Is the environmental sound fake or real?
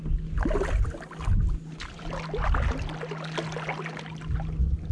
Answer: real